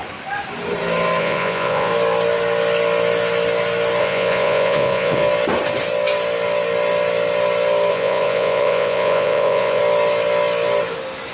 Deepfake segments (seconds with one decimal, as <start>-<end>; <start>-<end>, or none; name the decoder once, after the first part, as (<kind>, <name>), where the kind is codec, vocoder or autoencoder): 1.2-1.9 (vocoder, Vocos); 4.0-5.2; 7.9-9.8